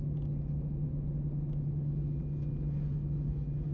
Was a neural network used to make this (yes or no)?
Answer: no